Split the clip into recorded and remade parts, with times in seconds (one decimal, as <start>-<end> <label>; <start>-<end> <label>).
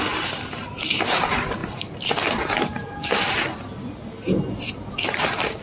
0.0-5.6 recorded